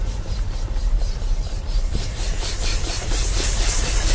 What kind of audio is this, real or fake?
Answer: fake